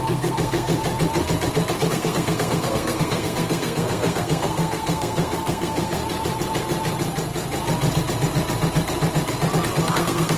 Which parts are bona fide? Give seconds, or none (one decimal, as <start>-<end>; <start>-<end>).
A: 0.8-1.9; 6.0-9.9